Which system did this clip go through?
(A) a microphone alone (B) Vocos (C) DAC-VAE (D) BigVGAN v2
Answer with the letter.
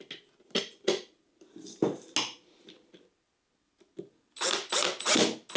A